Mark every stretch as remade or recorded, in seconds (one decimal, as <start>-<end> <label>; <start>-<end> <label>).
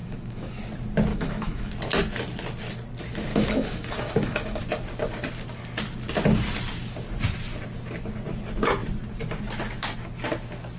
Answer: 0.0-0.6 remade; 0.6-1.1 recorded; 1.1-1.7 remade; 1.7-3.3 recorded; 3.3-4.6 remade; 4.6-10.8 recorded